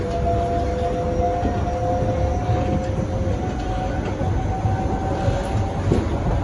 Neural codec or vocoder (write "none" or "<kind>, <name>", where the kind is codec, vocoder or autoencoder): none